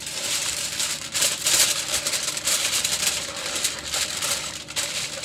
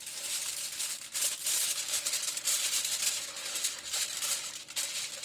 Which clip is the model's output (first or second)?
first